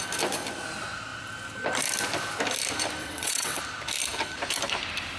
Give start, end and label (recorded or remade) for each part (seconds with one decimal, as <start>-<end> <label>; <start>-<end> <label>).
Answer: 0.0-3.0 recorded; 3.0-3.6 remade; 3.6-5.2 recorded